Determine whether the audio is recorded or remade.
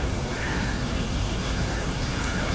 remade